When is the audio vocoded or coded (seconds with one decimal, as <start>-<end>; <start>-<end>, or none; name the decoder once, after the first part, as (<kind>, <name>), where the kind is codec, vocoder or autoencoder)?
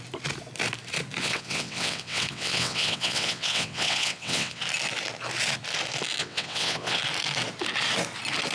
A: 1.2-4.6 (vocoder, WaveNeXt); 6.2-7.0